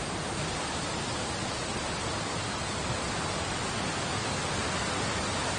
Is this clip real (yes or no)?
yes